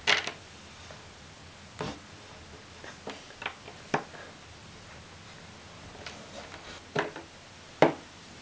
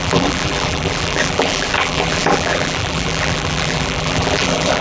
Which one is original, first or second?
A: first